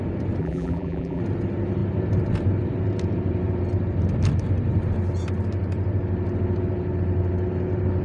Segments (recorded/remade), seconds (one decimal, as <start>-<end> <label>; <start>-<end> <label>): 0.0-0.4 recorded; 0.4-1.2 remade; 1.2-8.0 recorded